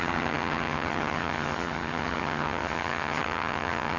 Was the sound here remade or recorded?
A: remade